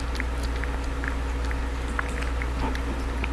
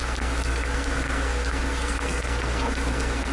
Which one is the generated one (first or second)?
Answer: second